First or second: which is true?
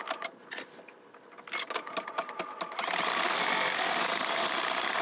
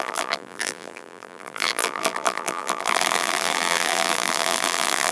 first